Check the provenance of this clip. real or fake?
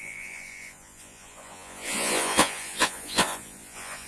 fake